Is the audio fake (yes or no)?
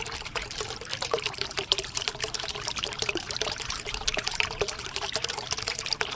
yes